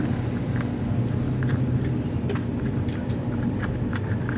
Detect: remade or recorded remade